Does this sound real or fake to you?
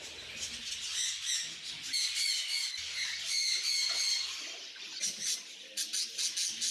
real